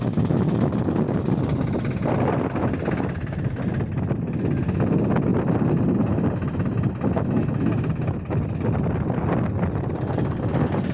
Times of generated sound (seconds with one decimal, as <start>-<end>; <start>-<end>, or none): none